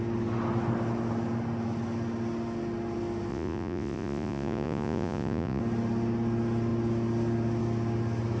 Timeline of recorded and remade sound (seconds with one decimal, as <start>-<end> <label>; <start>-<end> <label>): 0.0-3.3 recorded; 3.3-5.6 remade; 5.6-8.4 recorded